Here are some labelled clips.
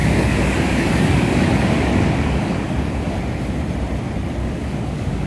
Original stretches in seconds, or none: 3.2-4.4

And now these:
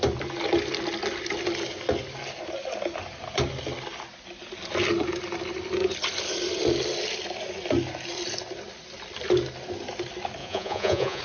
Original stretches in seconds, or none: 0.0-10.4

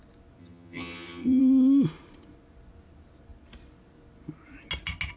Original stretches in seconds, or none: 0.0-0.4; 1.4-5.2

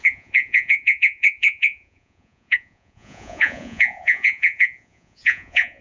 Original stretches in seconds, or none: none

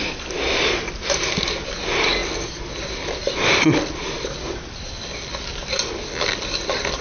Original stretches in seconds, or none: 0.0-7.0